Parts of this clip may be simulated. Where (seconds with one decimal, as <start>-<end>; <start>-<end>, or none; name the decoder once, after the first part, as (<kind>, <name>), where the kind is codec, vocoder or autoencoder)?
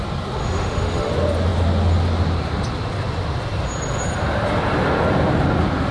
0.4-1.1 (autoencoder, DAC-VAE)